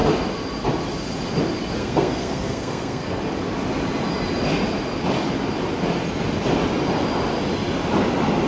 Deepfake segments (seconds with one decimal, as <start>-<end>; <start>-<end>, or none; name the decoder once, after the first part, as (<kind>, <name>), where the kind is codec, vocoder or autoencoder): 1.8-3.2 (codec, SNAC)

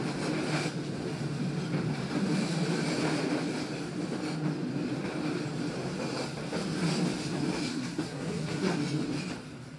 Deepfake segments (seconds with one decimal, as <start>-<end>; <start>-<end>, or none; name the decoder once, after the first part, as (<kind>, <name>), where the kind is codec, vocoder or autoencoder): 7.7-8.7 (codec, SNAC)

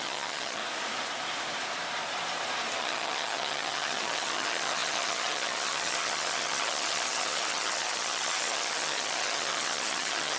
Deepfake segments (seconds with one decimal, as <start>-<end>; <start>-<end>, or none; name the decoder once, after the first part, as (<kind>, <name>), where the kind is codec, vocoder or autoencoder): 0.0-0.6 (vocoder, HiFi-GAN); 2.8-10.4

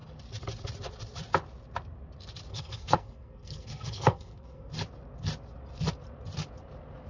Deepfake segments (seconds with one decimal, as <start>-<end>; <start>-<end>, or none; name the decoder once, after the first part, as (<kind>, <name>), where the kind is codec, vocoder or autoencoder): 2.5-4.7 (codec, SNAC)

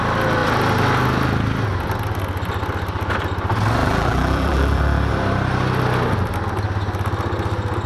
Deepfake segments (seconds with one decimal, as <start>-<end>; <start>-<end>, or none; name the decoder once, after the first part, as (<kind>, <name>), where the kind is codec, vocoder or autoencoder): 3.8-5.1 (vocoder, BigVGAN v2)

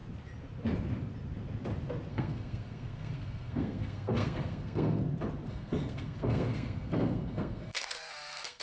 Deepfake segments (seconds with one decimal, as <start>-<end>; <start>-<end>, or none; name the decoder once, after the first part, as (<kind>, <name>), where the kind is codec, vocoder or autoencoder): 2.1-5.0 (codec, SNAC); 5.5-8.6

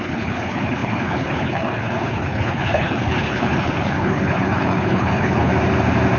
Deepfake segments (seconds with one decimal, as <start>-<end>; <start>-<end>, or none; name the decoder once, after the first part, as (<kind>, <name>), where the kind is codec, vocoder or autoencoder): 0.0-5.5 (codec, HILCodec)